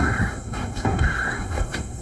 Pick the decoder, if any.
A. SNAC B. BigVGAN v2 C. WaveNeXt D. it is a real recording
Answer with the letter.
A